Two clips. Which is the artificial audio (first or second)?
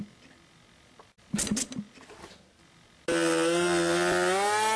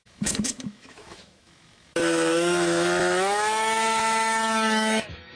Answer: second